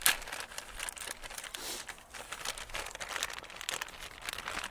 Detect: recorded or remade recorded